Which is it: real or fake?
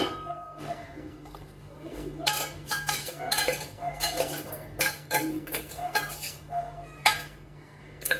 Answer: fake